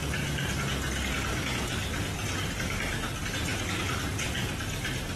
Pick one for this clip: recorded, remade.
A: recorded